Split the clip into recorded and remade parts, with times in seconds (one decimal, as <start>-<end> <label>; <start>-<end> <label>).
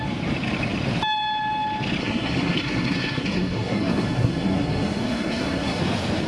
0.0-2.0 recorded; 2.0-5.8 remade; 5.8-6.3 recorded